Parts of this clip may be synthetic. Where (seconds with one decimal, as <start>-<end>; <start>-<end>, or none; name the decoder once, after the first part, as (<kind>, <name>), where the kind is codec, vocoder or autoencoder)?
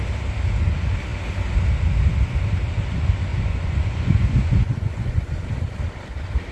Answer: 3.3-5.4 (vocoder, Vocos)